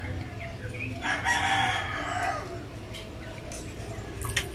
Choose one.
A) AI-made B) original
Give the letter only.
B